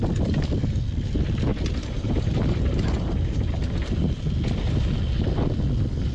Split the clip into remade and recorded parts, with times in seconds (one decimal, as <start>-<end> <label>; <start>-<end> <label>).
0.0-1.5 recorded; 1.5-3.5 remade; 3.5-6.1 recorded